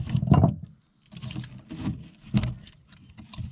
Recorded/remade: recorded